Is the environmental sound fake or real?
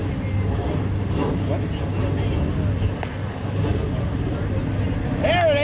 real